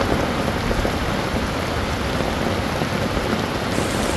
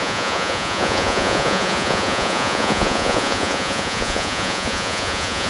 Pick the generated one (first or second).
second